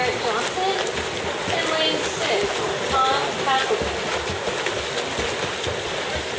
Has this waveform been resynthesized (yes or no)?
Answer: no